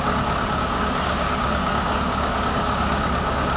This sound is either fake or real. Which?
fake